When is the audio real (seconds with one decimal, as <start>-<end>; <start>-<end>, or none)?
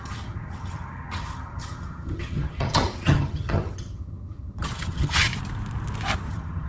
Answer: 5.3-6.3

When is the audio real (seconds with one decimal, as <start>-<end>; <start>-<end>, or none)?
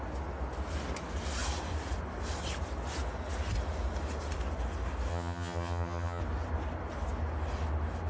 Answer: 0.0-5.1; 6.2-8.1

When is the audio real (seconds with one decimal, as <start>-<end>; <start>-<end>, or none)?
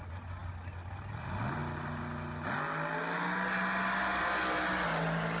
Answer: 0.0-5.4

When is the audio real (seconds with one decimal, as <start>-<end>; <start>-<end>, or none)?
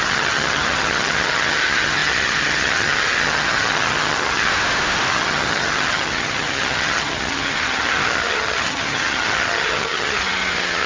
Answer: 4.5-5.1